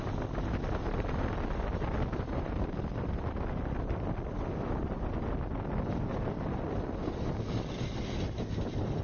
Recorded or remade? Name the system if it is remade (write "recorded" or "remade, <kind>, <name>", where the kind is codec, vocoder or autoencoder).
recorded